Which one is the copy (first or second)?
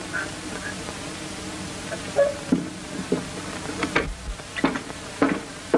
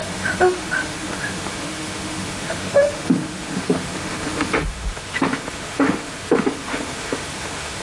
second